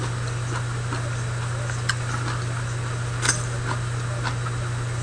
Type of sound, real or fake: real